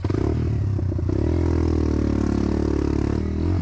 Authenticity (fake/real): real